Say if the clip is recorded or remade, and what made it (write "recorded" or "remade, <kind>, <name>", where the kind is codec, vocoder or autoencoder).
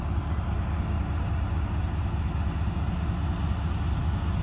recorded